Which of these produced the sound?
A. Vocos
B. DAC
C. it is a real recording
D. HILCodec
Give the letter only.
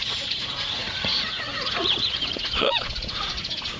A